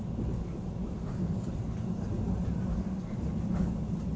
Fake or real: real